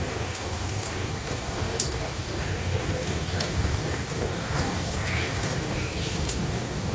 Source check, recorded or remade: remade